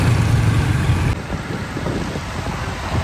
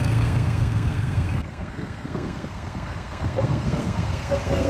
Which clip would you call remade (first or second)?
second